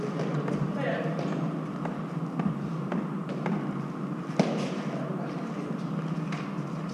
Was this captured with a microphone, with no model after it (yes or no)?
yes